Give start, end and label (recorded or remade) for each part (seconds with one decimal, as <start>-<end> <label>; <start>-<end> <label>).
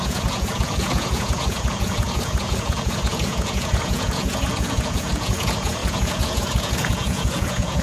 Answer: 0.0-7.8 remade